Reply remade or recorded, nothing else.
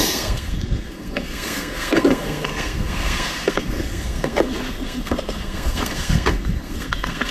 remade